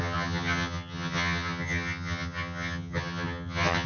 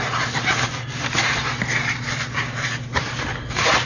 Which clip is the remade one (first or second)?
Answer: first